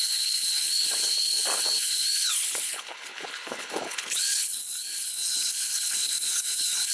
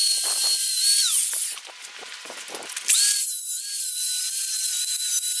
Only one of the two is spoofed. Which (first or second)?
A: first